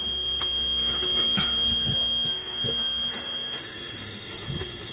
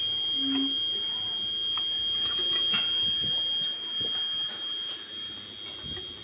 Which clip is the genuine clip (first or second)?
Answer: second